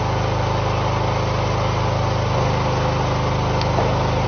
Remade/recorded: recorded